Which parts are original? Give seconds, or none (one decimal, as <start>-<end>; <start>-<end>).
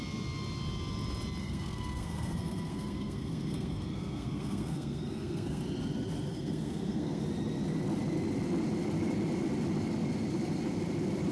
0.0-1.4; 5.6-6.3; 7.2-11.3